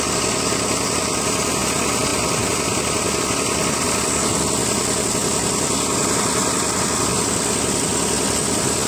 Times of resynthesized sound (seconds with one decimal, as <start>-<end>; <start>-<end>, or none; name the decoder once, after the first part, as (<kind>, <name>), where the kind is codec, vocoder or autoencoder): none